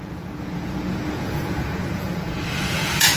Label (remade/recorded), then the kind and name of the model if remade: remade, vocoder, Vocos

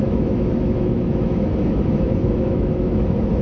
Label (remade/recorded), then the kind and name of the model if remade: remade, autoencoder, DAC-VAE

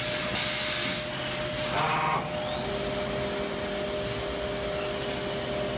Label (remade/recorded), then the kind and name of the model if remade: recorded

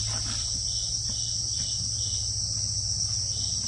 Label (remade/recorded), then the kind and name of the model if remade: recorded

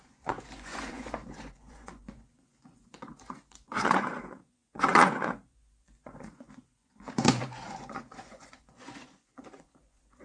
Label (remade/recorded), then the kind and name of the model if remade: remade, vocoder, Vocos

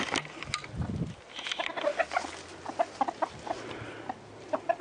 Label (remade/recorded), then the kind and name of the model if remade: recorded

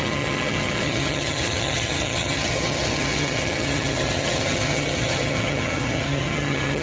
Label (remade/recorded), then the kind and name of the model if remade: remade, vocoder, HiFi-GAN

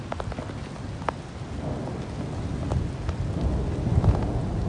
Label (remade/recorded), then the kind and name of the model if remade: recorded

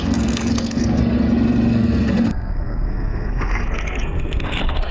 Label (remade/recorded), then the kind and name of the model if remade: remade, codec, SNAC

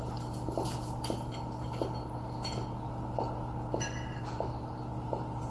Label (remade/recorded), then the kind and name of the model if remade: recorded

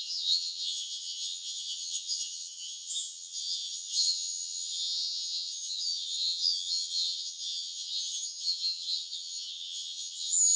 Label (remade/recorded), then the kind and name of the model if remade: remade, vocoder, HiFi-GAN